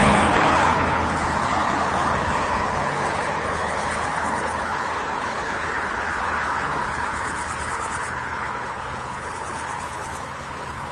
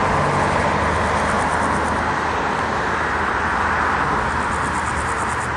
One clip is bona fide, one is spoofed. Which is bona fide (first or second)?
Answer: second